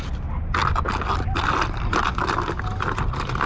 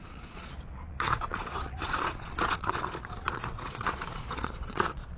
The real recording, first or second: first